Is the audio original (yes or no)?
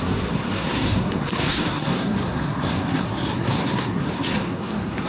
no